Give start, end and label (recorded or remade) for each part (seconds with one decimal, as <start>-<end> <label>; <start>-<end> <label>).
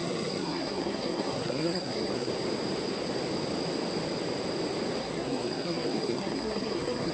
0.0-2.3 remade; 2.3-5.0 recorded; 5.0-7.1 remade